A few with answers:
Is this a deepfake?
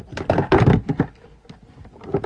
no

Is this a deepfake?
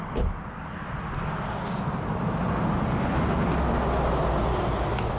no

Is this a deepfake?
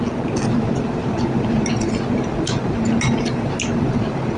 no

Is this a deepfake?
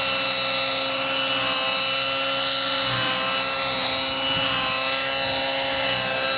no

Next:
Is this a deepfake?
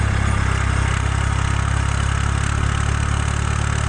no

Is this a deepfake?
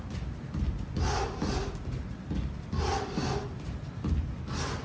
no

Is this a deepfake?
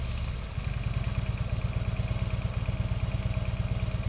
no